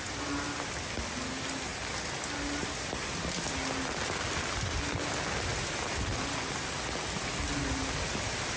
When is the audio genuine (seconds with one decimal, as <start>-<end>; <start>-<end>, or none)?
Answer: 0.0-8.6